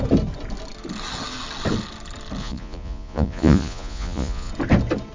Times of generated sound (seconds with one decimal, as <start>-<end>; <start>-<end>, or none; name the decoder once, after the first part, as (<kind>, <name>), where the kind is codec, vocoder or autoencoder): 2.4-4.5 (vocoder, Vocos)